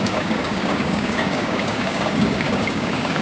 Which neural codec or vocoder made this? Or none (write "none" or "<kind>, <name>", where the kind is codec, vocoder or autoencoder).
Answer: codec, DAC